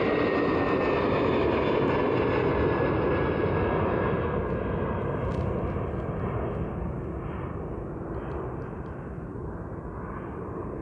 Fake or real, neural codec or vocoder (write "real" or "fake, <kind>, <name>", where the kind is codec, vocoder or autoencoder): real